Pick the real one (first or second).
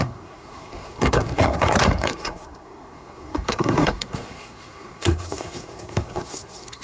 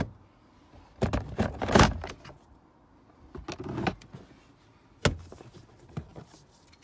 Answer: second